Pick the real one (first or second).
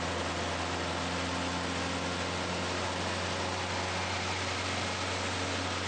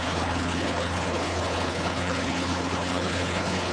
first